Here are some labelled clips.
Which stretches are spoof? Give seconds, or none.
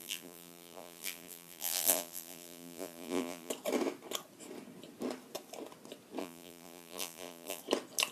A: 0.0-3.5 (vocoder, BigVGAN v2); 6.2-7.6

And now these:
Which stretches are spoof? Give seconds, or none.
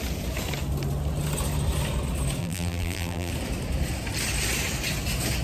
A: 2.4-3.3 (vocoder, BigVGAN v2)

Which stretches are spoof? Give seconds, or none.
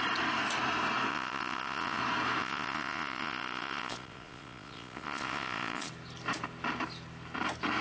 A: 1.1-2.0 (vocoder, Vocos); 2.4-5.9